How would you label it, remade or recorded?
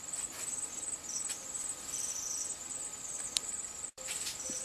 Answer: remade